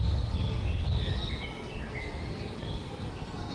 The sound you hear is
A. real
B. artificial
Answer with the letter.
B